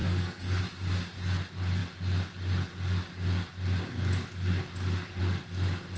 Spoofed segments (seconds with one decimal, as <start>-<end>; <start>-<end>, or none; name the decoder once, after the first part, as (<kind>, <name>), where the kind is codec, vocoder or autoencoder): 0.0-0.6 (codec, SNAC)